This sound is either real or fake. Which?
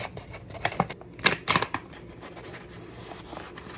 real